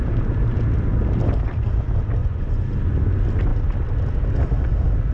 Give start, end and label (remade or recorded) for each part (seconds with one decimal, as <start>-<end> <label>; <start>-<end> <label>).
0.0-2.2 recorded; 2.2-2.7 remade; 2.7-5.1 recorded

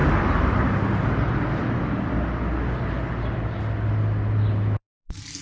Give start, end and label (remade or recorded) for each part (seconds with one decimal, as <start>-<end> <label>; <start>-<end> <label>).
0.0-5.4 recorded

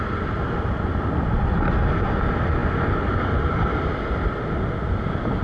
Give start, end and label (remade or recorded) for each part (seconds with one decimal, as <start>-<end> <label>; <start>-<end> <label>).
0.0-5.4 recorded

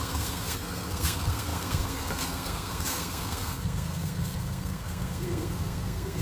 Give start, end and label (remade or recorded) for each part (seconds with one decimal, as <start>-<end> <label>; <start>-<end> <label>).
0.0-6.2 remade

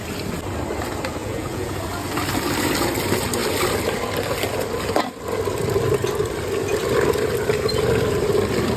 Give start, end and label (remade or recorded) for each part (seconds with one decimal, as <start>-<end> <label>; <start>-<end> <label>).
0.0-1.2 recorded; 1.2-1.7 remade; 1.7-8.8 recorded